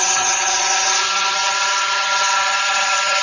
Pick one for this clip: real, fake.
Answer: fake